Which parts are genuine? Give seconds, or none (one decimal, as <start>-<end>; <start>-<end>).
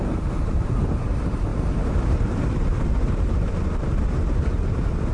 none